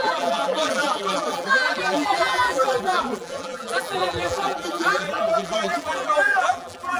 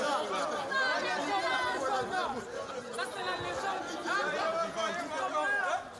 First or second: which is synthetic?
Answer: first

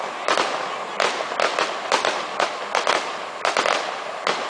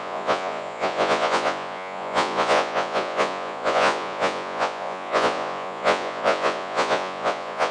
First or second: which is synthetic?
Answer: second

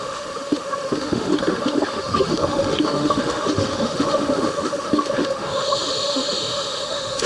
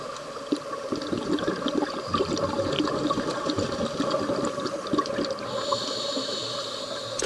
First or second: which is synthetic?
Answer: first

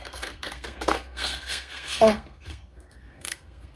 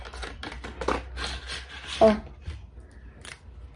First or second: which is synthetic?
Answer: first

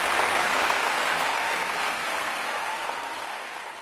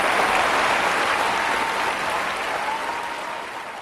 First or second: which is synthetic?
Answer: first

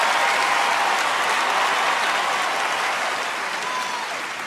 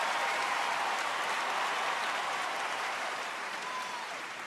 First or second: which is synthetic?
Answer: second